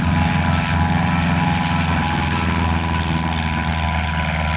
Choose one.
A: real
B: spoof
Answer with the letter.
A